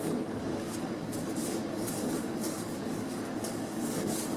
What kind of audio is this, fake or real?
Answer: fake